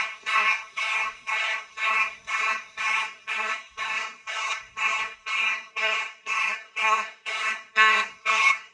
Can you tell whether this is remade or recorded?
remade